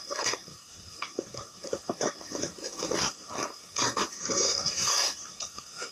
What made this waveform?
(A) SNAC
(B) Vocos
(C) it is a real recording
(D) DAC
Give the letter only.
A